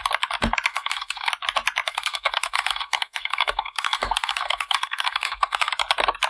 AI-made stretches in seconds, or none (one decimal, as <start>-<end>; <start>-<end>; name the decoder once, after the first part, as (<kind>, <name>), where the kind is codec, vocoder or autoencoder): 0.7-1.3 (codec, SNAC); 1.9-5.7